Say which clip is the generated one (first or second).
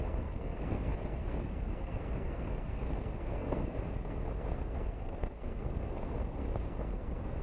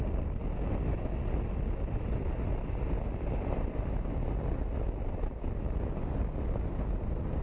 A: first